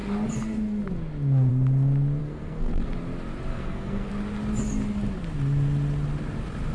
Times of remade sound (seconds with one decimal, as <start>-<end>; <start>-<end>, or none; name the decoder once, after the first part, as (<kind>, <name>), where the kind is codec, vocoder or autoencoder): 2.2-2.9 (codec, SNAC); 3.5-4.1